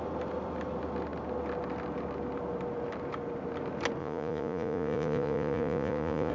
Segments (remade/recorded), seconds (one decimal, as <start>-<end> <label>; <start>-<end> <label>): 0.0-4.0 recorded; 4.0-6.3 remade